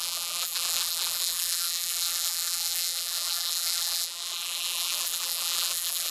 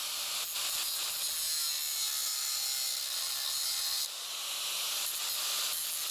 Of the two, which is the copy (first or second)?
first